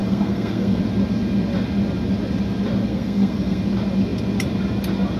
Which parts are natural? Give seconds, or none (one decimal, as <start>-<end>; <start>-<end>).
0.8-2.9; 3.6-5.2